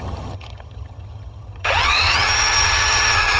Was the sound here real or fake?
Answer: fake